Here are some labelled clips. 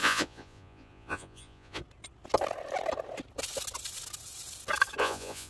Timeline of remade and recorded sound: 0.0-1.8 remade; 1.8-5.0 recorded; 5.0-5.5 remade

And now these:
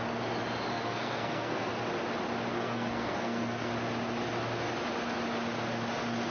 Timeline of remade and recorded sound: 0.0-0.7 recorded; 0.7-1.7 remade; 1.7-2.5 recorded; 2.5-3.7 remade; 3.7-6.3 recorded

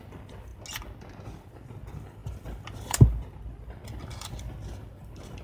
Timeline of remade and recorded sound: 0.0-0.5 remade; 0.5-1.4 recorded; 1.4-5.4 remade

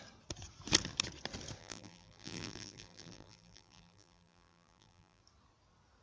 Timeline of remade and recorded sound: 0.0-1.6 recorded; 1.6-5.2 remade; 5.2-6.0 recorded